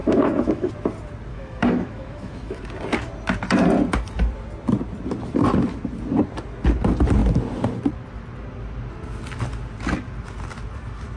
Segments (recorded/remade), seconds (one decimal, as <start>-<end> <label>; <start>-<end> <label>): 0.0-0.7 remade; 0.7-1.3 recorded; 1.3-2.6 remade; 2.6-11.2 recorded